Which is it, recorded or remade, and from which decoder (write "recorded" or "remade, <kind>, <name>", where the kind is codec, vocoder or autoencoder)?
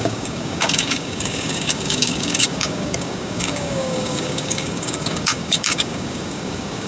remade, codec, DAC